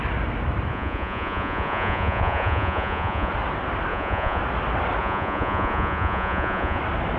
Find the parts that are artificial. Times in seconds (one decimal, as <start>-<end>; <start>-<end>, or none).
0.7-3.3; 3.9-4.4; 5.0-6.8

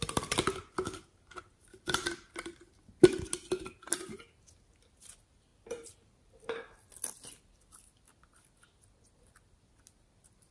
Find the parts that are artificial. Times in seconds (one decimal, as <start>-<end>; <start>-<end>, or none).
5.5-8.1

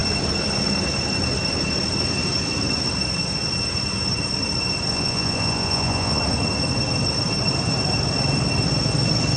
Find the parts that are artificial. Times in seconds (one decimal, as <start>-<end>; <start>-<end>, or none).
4.9-6.2

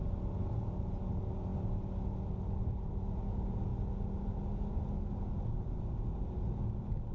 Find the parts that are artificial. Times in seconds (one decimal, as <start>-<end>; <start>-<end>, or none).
none

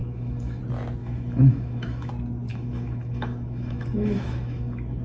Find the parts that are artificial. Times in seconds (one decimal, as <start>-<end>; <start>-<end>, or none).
0.0-0.6; 1.0-2.1; 2.5-5.0